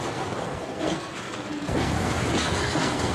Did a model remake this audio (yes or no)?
yes